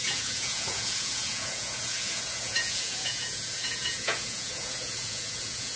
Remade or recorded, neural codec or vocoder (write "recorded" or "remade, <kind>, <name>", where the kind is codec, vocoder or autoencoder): remade, vocoder, Vocos